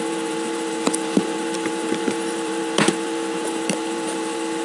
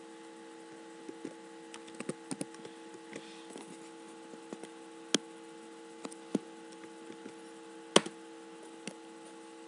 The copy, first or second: first